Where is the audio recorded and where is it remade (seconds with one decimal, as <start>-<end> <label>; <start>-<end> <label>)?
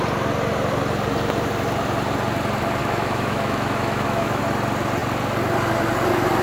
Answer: 0.0-2.8 recorded; 2.8-4.4 remade; 4.4-6.4 recorded